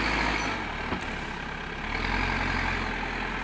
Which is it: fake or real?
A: real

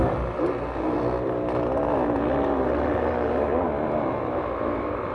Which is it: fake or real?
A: real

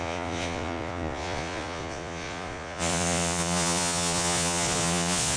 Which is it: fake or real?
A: fake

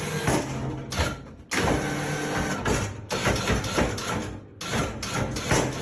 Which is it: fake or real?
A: real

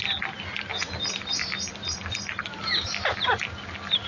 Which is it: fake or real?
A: real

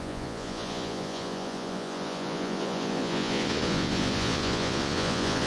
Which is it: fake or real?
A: fake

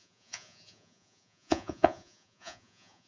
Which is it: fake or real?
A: fake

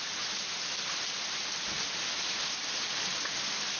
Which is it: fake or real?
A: real